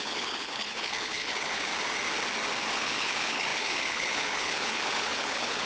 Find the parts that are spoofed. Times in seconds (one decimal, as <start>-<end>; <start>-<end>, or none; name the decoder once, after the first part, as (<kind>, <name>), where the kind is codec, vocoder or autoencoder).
0.0-1.7 (codec, HILCodec); 2.7-5.7